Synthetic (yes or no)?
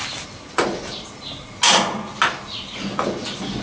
no